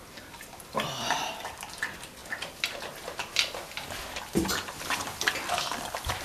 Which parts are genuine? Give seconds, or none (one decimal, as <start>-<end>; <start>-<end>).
0.0-6.2